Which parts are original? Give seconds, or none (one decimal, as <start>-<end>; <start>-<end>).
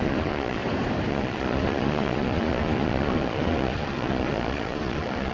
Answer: 0.6-1.1